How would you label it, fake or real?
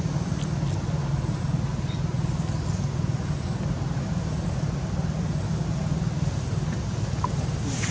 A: real